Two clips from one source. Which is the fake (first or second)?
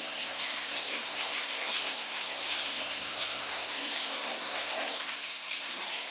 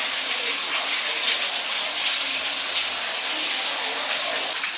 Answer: first